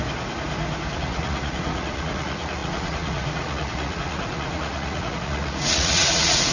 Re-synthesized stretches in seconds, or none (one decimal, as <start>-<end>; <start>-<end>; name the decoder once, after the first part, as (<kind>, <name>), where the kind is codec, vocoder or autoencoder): 0.9-6.5 (vocoder, Vocos)